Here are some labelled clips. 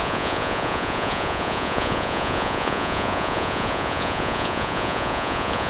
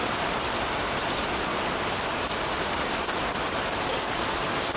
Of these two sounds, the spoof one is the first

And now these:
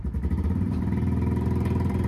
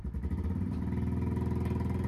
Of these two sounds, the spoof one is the first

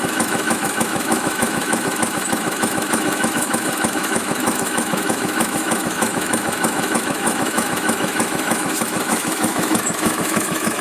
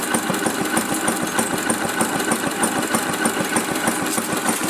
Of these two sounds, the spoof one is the first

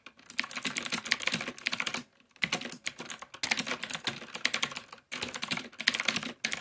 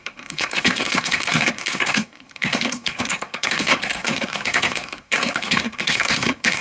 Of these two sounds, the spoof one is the second